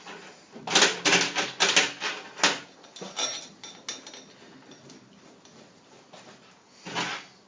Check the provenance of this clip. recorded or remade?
recorded